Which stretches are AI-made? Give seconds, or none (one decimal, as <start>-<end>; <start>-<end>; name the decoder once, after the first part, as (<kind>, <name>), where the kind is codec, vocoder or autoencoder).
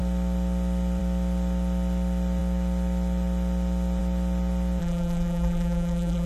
4.8-6.3 (vocoder, BigVGAN v2)